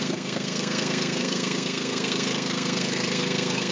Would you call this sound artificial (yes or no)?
yes